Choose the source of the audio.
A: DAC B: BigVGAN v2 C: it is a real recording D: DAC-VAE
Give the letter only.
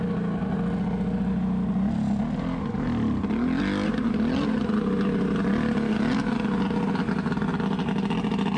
C